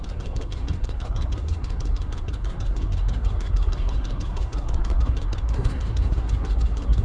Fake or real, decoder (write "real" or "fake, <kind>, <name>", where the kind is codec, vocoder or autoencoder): fake, codec, SNAC